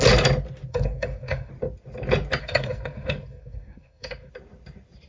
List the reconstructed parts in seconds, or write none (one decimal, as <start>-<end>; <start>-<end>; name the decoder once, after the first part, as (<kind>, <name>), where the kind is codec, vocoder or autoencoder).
0.7-1.5 (codec, SNAC); 2.4-4.3